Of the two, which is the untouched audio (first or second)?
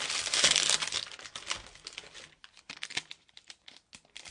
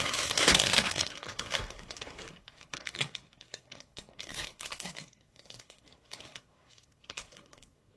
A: first